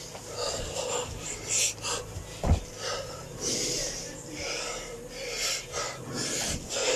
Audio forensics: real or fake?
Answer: real